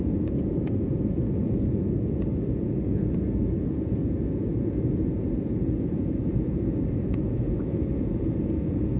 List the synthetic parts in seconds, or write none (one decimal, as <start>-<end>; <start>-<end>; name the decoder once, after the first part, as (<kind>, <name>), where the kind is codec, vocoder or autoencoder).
0.0-9.0 (vocoder, Vocos)